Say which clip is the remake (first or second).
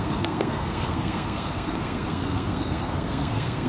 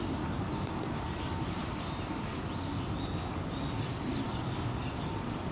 first